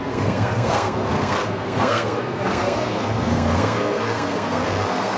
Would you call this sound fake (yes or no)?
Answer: yes